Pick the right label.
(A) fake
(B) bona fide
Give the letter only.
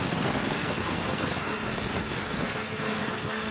A